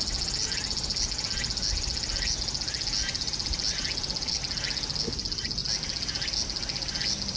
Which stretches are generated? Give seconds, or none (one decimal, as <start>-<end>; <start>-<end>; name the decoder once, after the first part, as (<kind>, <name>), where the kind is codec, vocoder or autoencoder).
none